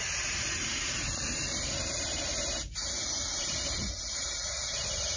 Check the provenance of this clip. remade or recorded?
remade